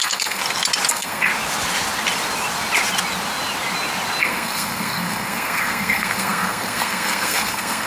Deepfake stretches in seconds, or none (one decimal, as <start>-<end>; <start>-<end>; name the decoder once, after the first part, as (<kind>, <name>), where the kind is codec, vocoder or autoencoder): 0.0-0.4 (codec, SNAC); 0.9-1.3; 4.2-7.9

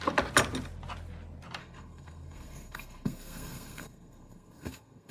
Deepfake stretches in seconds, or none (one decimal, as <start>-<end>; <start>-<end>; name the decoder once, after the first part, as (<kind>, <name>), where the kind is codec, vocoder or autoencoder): 1.6-5.1 (codec, SNAC)

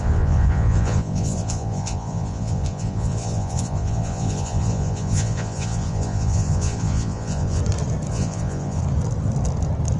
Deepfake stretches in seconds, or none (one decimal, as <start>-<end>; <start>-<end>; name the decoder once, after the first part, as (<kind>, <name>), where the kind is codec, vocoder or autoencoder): 0.0-7.6 (vocoder, Vocos); 8.1-8.8